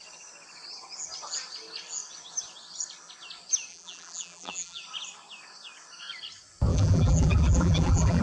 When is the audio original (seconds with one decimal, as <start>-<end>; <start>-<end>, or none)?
0.0-3.7; 4.8-6.7